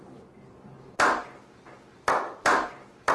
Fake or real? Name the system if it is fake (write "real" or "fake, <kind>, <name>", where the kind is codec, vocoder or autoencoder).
real